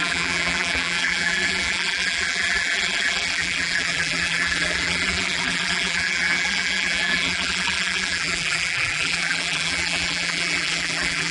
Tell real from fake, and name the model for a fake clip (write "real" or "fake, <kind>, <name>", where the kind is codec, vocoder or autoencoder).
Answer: fake, vocoder, BigVGAN v2